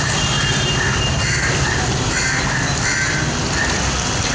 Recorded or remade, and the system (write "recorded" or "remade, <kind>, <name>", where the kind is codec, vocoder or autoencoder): recorded